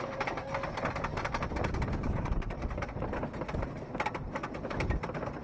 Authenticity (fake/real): real